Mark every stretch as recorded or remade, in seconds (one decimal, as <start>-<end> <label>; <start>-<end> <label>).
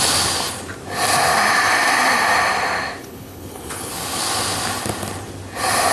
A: 0.0-3.0 recorded; 3.0-3.9 remade; 3.9-5.9 recorded